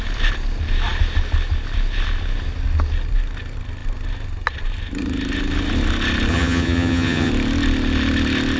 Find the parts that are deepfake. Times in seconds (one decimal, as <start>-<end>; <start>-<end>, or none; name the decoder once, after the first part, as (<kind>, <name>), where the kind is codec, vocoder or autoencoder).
6.3-7.3 (vocoder, HiFi-GAN)